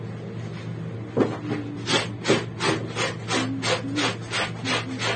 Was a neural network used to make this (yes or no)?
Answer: no